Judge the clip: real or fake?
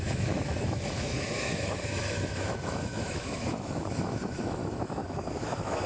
fake